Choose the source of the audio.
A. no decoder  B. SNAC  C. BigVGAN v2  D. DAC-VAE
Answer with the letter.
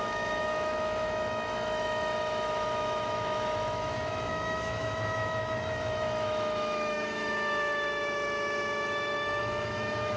D